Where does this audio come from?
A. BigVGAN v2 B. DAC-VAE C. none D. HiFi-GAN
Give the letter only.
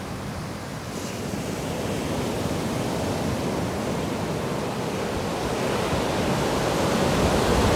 C